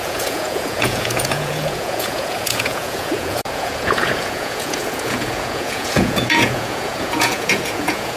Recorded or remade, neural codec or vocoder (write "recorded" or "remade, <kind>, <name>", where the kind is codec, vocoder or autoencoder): remade, vocoder, Vocos